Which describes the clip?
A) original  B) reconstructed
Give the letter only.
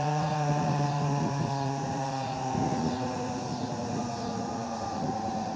B